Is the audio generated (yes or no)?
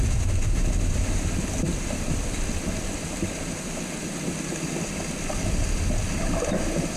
no